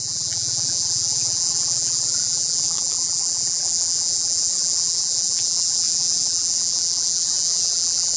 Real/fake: fake